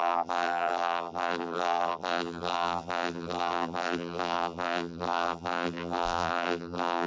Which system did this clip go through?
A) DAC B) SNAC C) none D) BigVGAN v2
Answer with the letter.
D